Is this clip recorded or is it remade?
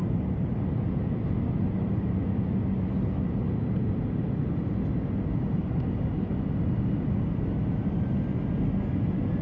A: recorded